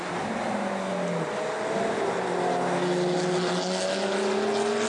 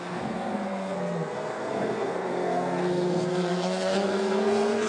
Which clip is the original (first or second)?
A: first